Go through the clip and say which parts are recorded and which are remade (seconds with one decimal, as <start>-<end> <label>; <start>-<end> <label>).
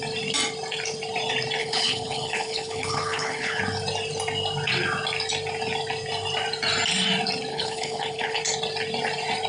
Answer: 0.0-1.6 recorded; 1.6-3.6 remade; 3.6-7.5 recorded; 7.5-8.4 remade; 8.4-9.5 recorded